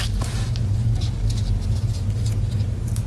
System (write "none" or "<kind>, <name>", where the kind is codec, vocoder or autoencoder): none